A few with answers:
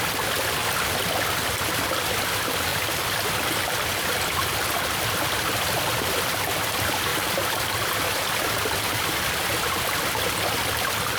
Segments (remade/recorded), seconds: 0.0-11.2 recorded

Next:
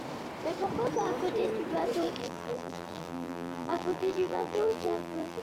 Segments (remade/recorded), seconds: 0.0-2.2 recorded; 2.2-5.4 remade

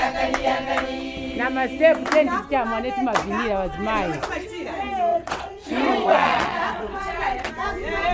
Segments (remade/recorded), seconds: 0.0-5.1 recorded; 5.1-7.5 remade; 7.5-8.1 recorded